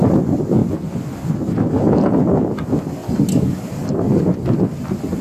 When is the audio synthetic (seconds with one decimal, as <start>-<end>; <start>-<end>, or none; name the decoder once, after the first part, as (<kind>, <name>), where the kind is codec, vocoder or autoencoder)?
0.0-5.2 (vocoder, BigVGAN v2)